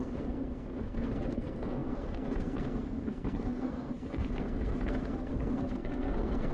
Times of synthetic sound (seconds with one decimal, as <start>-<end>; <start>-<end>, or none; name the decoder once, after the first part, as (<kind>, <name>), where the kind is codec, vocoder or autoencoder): 0.0-6.5 (codec, SNAC)